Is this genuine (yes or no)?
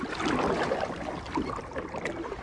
yes